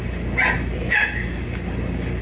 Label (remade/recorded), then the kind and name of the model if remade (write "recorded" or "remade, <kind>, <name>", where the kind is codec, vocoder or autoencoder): recorded